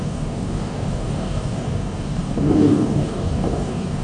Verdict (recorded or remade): remade